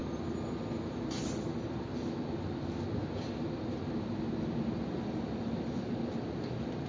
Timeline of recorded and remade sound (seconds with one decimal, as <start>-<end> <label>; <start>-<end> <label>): 0.0-6.9 recorded